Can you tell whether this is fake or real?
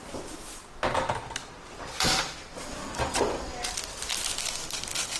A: real